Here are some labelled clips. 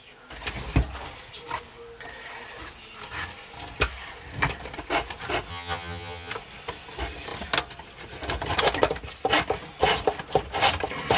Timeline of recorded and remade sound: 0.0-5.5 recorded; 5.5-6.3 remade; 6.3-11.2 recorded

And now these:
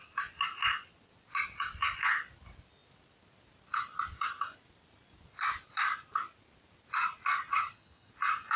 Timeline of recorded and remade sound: 0.0-7.5 recorded; 7.5-8.1 remade; 8.1-8.6 recorded

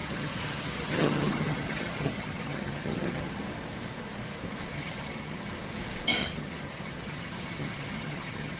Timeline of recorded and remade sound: 0.0-3.4 remade; 3.4-4.7 recorded; 4.7-5.5 remade; 5.5-6.2 recorded; 6.2-8.6 remade

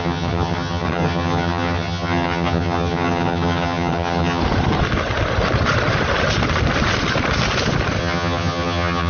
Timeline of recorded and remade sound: 0.0-4.4 remade; 4.4-8.0 recorded; 8.0-9.1 remade

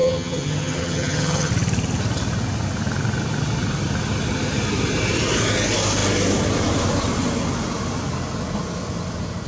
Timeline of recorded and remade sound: 0.0-1.5 remade; 1.5-9.5 recorded

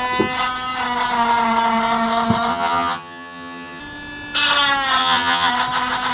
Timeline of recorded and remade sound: 0.0-2.5 recorded; 2.5-3.8 remade; 3.8-5.0 recorded; 5.0-5.5 remade; 5.5-6.1 recorded

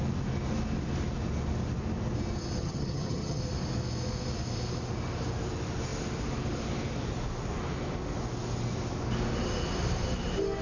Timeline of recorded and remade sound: 0.0-2.6 recorded; 2.6-3.4 remade; 3.4-10.6 recorded